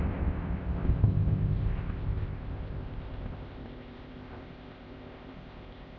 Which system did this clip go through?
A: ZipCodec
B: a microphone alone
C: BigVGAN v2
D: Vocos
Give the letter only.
A